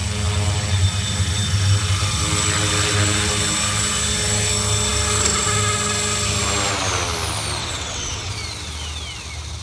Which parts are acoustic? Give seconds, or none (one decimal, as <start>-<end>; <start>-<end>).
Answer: 0.0-7.6; 8.3-9.6